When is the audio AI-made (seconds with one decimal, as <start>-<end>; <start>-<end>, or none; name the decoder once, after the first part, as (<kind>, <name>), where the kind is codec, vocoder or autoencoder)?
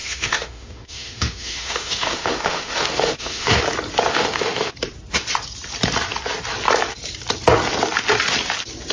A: 0.0-3.6 (autoencoder, DAC-VAE); 4.1-4.7